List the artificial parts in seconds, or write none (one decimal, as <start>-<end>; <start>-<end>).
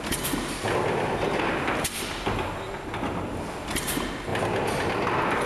none